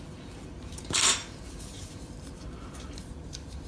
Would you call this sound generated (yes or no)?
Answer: yes